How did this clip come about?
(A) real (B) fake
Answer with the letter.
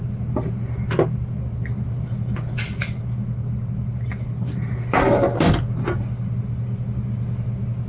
A